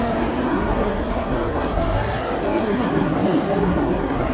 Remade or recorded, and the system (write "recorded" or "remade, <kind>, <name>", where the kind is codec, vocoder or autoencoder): remade, codec, SNAC